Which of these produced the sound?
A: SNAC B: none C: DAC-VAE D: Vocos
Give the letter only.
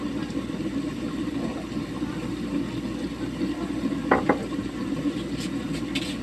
B